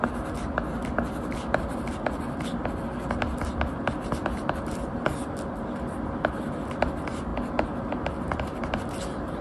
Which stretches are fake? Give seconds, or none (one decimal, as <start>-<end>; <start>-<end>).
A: none